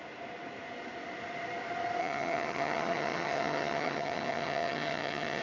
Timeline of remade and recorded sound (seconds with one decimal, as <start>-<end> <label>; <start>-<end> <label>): 0.0-2.0 recorded; 2.0-5.4 remade